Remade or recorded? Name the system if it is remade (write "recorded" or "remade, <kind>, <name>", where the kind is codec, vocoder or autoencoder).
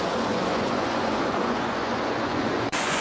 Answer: remade, vocoder, Vocos